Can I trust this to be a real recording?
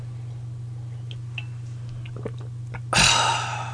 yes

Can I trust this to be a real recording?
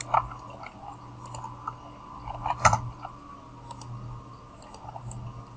yes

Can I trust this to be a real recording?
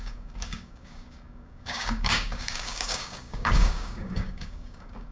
no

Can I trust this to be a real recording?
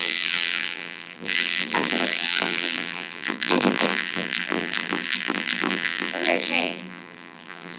no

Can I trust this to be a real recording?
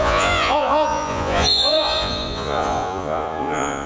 no